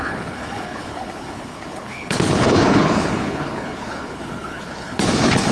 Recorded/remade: remade